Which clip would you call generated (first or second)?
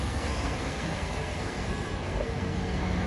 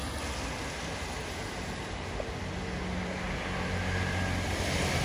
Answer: first